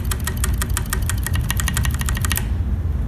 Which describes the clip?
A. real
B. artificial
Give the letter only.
A